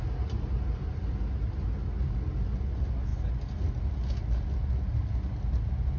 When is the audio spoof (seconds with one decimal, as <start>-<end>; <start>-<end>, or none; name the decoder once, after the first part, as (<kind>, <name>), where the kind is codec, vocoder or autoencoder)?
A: none